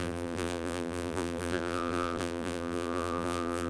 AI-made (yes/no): yes